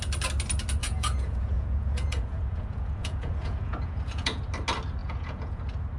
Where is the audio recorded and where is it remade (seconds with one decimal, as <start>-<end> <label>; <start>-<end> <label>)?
0.0-0.8 recorded; 0.8-4.4 remade; 4.4-5.0 recorded; 5.0-5.6 remade; 5.6-6.0 recorded